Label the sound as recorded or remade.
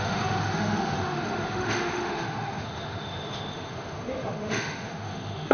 remade